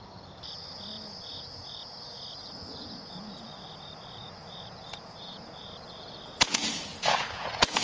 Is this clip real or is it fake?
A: fake